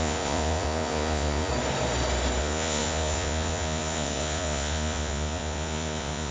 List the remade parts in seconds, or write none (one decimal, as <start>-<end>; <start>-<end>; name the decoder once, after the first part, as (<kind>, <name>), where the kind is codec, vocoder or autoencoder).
0.0-1.5 (vocoder, Vocos); 2.4-6.3